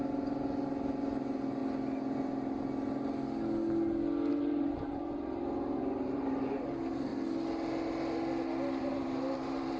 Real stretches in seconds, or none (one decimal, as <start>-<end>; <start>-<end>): 1.6-4.3; 7.1-8.8